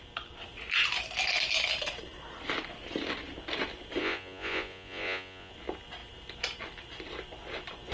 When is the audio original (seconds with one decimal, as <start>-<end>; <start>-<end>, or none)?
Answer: 0.0-4.0; 5.5-7.9